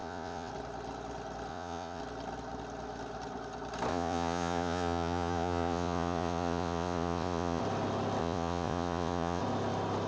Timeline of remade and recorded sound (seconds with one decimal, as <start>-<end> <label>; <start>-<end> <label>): 0.0-0.5 remade; 0.5-1.5 recorded; 1.5-2.0 remade; 2.0-3.9 recorded; 3.9-7.6 remade; 7.6-8.2 recorded; 8.2-9.4 remade; 9.4-10.1 recorded